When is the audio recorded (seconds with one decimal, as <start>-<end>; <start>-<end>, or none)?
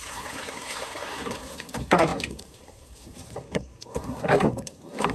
none